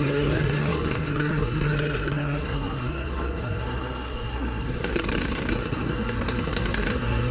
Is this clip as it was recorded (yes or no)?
no